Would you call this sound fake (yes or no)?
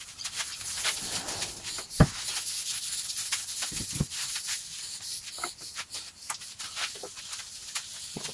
no